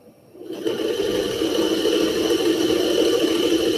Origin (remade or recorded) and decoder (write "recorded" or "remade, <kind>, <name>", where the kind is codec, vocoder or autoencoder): recorded